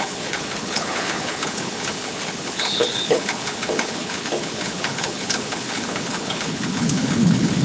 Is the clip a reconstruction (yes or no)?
yes